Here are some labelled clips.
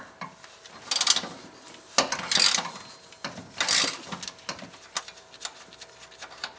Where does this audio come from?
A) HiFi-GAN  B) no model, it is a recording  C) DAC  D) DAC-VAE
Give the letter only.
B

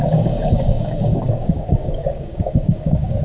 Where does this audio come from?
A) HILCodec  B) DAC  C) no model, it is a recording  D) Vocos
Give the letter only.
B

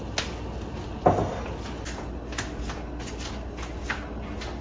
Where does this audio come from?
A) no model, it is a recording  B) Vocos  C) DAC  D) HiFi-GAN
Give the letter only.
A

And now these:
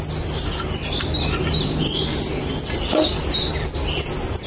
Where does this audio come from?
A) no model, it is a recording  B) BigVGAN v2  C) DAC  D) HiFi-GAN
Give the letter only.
A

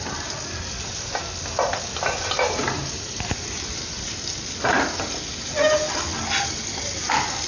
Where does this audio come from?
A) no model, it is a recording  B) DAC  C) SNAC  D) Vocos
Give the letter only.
A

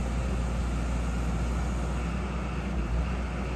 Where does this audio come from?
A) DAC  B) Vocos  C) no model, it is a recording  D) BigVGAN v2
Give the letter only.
C